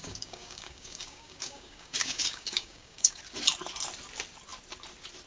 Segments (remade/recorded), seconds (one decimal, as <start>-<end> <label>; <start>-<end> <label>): 0.0-3.2 remade; 3.2-5.3 recorded